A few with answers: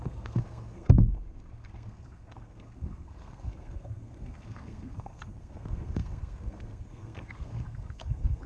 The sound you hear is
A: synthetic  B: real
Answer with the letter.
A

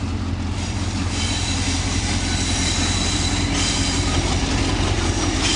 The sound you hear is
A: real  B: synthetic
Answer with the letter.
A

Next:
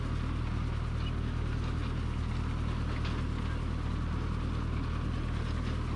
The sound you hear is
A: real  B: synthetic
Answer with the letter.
A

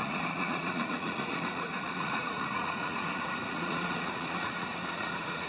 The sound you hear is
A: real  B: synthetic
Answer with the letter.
B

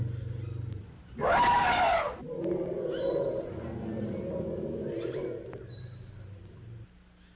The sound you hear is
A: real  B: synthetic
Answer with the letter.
A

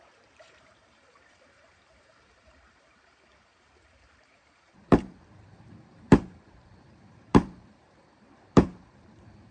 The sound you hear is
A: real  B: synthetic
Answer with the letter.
B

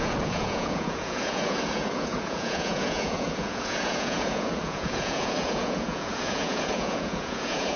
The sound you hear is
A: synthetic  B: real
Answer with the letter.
A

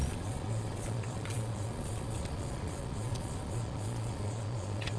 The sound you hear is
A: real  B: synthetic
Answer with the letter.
B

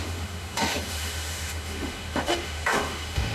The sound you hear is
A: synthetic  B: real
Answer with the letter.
A